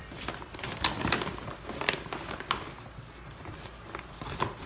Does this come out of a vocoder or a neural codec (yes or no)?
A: yes